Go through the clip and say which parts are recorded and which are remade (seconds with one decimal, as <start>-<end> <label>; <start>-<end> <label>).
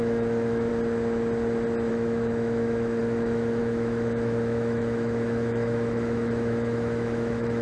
0.0-0.7 remade; 0.7-1.9 recorded; 1.9-7.6 remade